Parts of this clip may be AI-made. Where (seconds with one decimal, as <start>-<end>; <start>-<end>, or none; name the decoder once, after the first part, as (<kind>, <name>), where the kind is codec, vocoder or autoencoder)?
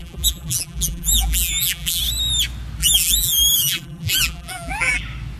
0.0-2.0 (vocoder, BigVGAN v2); 2.8-5.0